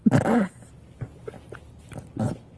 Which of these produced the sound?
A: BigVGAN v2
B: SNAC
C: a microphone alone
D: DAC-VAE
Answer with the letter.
C